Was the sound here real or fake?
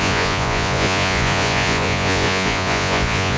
fake